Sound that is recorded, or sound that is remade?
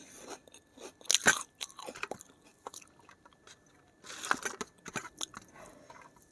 recorded